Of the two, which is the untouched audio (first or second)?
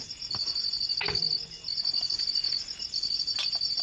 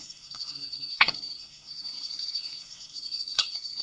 first